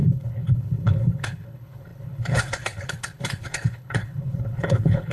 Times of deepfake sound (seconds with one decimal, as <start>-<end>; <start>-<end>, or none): 0.0-5.1